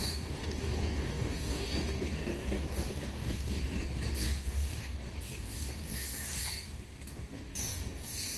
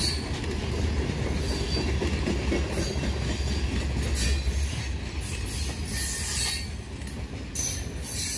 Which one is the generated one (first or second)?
first